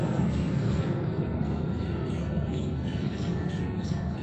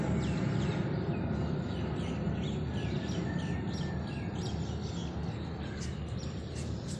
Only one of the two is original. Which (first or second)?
second